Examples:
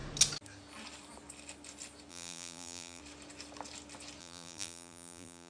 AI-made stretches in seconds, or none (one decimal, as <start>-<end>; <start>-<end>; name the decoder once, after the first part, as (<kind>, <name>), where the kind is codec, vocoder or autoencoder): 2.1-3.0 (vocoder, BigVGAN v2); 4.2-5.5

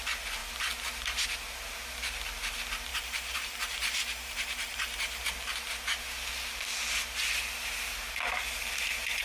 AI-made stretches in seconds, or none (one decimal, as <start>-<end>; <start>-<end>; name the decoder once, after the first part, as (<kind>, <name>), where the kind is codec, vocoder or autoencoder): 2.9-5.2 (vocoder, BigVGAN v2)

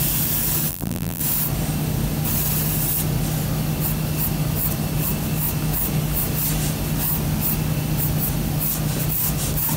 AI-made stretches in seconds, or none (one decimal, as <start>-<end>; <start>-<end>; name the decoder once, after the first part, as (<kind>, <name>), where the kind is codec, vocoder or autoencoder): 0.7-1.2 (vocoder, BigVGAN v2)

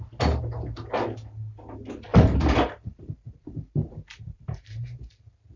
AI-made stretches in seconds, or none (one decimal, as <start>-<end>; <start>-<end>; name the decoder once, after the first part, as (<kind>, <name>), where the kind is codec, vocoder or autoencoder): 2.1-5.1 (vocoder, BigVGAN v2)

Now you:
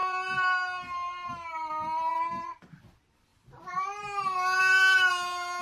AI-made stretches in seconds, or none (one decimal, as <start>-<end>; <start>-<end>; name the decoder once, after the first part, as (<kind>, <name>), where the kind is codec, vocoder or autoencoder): none

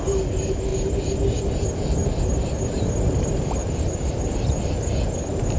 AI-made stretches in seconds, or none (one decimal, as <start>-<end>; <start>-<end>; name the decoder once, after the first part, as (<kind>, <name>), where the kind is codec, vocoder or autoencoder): 3.6-4.7 (vocoder, BigVGAN v2)

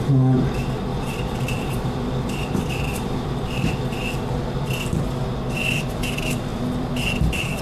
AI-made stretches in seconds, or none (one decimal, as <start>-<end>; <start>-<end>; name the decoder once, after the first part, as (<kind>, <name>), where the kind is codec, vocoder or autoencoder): 0.9-3.7 (vocoder, BigVGAN v2); 6.5-7.6

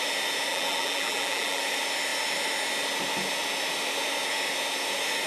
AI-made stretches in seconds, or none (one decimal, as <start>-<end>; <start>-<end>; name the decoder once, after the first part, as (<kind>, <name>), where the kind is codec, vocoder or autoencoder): 0.5-1.6 (vocoder, BigVGAN v2)